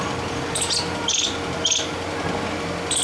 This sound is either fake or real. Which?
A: real